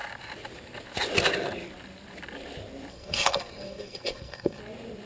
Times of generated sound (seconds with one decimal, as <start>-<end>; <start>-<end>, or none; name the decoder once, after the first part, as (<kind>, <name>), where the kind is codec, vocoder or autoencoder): 2.9-4.6 (codec, SNAC)